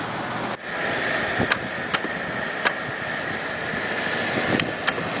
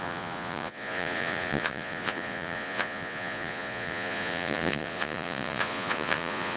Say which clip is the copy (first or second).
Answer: second